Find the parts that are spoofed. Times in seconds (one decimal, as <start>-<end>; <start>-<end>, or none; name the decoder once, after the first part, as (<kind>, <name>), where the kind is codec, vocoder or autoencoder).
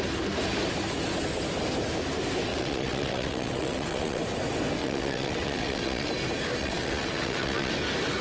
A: 2.5-4.2 (vocoder, WaveNeXt); 4.8-6.1; 6.6-7.7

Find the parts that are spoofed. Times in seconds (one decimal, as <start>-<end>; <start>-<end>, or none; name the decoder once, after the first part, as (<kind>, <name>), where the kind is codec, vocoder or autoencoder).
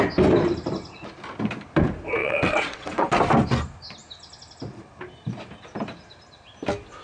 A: 2.2-3.1 (vocoder, WaveNeXt)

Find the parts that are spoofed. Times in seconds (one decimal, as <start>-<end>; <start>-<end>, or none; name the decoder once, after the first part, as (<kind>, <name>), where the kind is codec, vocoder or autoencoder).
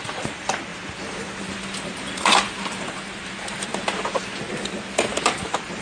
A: none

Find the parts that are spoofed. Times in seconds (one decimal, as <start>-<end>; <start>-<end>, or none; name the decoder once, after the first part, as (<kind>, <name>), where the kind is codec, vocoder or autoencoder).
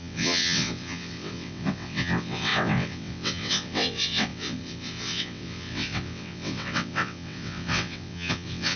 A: 0.0-8.8 (vocoder, WaveNeXt)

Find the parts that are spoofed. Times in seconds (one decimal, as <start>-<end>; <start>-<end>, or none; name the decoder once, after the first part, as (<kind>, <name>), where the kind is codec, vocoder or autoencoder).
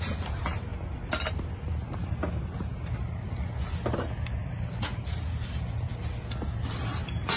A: none